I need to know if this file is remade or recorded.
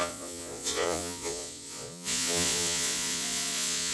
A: remade